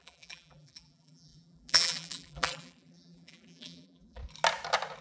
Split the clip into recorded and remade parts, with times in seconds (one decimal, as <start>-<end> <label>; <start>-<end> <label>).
0.0-4.2 remade; 4.2-5.0 recorded